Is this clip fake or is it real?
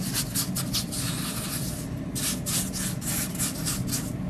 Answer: real